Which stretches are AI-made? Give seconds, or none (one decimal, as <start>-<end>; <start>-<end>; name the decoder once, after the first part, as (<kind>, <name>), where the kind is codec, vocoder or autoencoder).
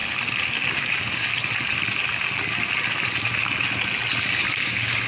0.9-1.3 (codec, DAC); 4.4-5.1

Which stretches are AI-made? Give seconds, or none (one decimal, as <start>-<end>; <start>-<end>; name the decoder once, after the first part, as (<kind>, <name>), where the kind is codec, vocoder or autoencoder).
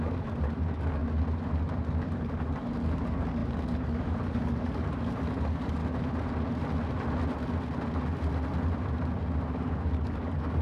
0.0-1.0 (codec, DAC); 1.9-5.8; 9.5-10.6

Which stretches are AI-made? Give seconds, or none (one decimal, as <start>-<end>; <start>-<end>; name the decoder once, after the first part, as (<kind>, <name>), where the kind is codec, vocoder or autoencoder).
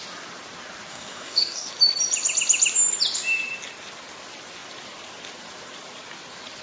0.9-1.7 (codec, DAC)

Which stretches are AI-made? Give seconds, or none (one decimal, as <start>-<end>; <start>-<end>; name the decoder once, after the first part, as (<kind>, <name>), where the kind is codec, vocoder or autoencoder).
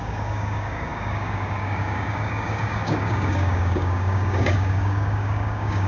0.0-5.9 (codec, DAC)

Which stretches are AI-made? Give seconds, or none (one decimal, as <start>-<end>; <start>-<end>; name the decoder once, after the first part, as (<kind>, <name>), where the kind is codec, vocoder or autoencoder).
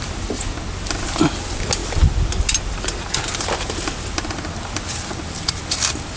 none